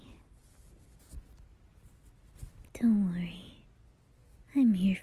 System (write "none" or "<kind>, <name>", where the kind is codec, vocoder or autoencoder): none